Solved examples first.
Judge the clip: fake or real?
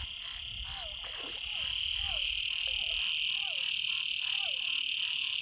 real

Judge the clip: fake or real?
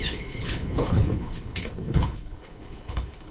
fake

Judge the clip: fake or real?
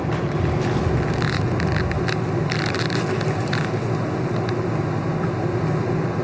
real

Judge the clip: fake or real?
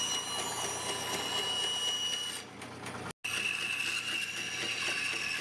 real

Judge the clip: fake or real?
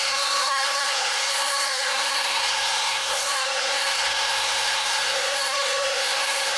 fake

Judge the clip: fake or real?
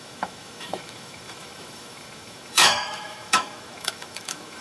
fake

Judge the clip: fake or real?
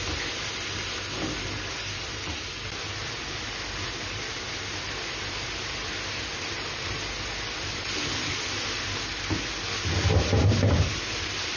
real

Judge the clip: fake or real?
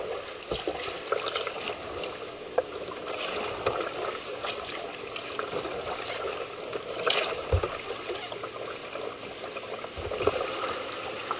real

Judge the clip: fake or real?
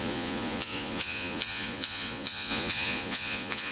fake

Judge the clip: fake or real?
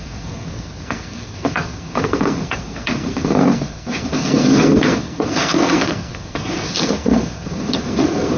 fake